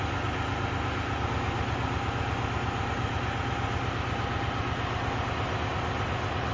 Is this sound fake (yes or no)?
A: no